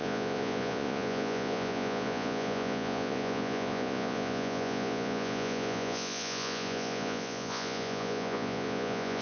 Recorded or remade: remade